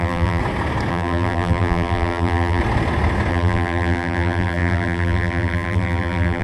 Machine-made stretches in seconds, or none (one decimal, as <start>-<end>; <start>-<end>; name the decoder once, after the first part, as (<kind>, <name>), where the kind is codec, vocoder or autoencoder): 0.0-0.4 (vocoder, BigVGAN v2); 0.9-2.6; 3.3-6.4